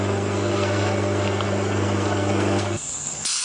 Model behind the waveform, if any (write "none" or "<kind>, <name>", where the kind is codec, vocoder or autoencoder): codec, SNAC